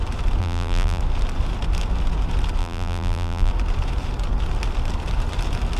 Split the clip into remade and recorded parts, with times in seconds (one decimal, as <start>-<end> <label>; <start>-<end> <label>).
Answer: 0.0-0.4 recorded; 0.4-1.0 remade; 1.0-2.6 recorded; 2.6-3.5 remade; 3.5-5.8 recorded